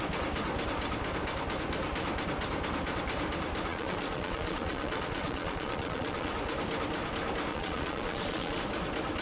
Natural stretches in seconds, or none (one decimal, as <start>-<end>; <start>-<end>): 0.0-3.7; 6.3-7.5; 8.6-9.2